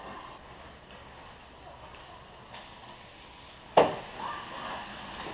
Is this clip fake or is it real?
real